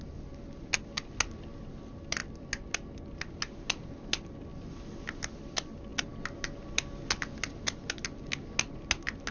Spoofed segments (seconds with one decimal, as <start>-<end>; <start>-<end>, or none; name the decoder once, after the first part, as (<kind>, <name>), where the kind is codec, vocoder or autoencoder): none